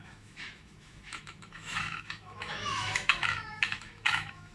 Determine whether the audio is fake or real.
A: fake